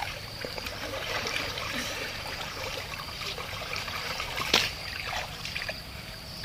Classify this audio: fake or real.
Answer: fake